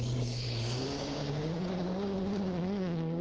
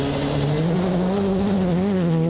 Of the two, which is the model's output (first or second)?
first